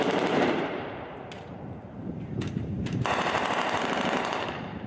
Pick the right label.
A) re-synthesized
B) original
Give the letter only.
A